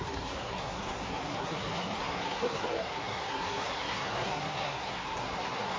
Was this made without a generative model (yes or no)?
no